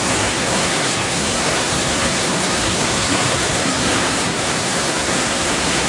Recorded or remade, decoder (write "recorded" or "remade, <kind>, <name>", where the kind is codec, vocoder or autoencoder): remade, codec, SNAC